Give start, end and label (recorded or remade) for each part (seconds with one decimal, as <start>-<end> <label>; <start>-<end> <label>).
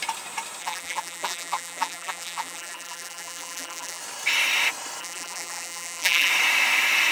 0.0-0.6 recorded; 0.6-4.0 remade; 4.0-5.0 recorded; 5.0-6.3 remade; 6.3-7.1 recorded